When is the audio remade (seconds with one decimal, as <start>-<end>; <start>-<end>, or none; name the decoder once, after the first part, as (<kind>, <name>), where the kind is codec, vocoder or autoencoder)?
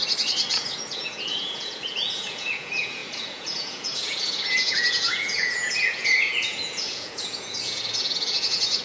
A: 0.5-8.8 (vocoder, Vocos)